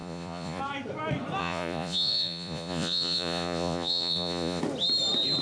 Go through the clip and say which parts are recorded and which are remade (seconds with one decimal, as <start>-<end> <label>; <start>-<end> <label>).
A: 0.0-0.6 remade; 0.6-1.4 recorded; 1.4-4.6 remade; 4.6-5.4 recorded